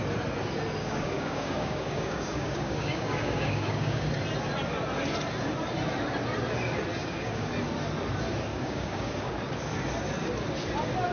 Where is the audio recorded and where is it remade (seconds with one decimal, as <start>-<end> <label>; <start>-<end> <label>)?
0.0-0.8 recorded; 0.8-4.1 remade; 4.1-7.0 recorded; 7.0-7.5 remade; 7.5-8.5 recorded; 8.5-9.3 remade; 9.3-11.1 recorded